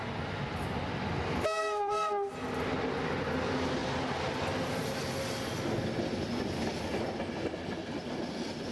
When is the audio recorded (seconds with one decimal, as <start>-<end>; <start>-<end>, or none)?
0.0-1.6; 2.3-8.7